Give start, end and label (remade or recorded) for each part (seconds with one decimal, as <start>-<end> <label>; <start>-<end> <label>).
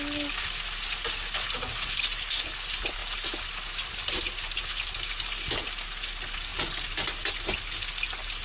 0.0-8.4 recorded